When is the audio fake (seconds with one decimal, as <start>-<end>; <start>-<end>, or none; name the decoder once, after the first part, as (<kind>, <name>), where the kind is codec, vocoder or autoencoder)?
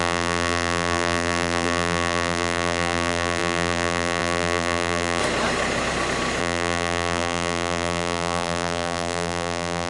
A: 0.0-5.2 (vocoder, BigVGAN v2); 6.4-9.9